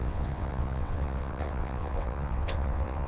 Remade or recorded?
remade